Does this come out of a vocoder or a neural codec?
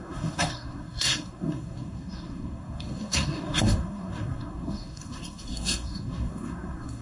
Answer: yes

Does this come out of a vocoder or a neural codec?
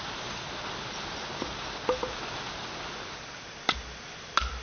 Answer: no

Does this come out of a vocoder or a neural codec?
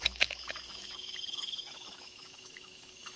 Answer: yes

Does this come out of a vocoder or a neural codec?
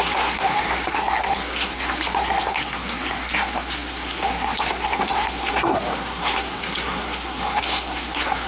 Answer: yes